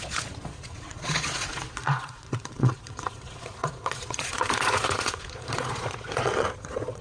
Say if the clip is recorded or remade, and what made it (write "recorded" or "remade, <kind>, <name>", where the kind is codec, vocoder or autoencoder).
remade, vocoder, Vocos